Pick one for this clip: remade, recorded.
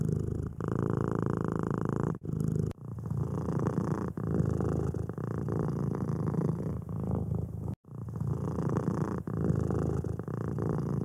recorded